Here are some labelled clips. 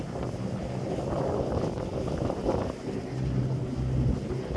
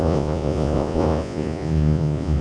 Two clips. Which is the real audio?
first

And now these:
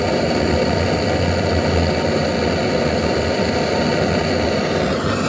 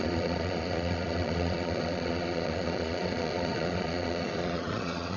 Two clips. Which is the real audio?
first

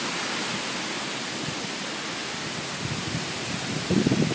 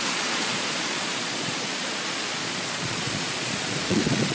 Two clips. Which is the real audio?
first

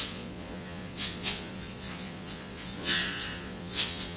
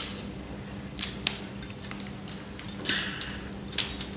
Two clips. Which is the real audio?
second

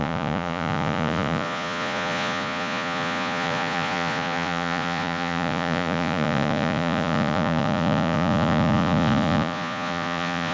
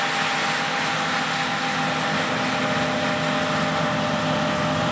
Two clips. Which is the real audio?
second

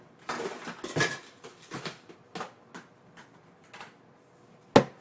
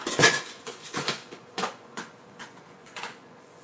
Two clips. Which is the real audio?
first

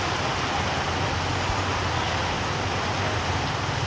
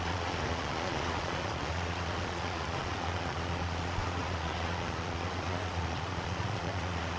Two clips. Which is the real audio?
first